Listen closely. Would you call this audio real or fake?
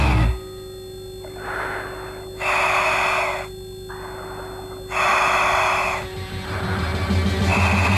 real